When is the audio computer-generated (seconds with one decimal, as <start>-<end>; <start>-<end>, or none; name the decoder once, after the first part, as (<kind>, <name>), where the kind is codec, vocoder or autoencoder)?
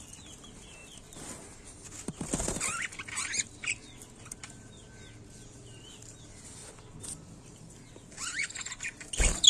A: 8.3-8.8 (vocoder, BigVGAN v2)